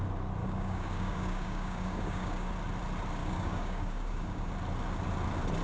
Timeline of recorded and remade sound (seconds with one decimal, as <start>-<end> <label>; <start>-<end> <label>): 0.0-0.4 recorded; 0.4-2.5 remade; 2.5-3.2 recorded; 3.2-4.5 remade; 4.5-5.6 recorded